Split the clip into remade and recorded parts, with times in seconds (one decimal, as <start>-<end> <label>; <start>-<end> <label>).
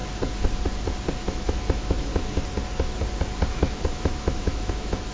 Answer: 0.0-1.2 recorded; 1.2-2.1 remade; 2.1-3.5 recorded; 3.5-5.1 remade